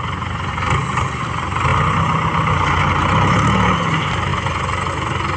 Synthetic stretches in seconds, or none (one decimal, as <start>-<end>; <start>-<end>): none